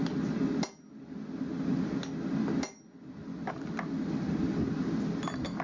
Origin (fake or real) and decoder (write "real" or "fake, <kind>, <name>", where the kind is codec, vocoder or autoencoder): real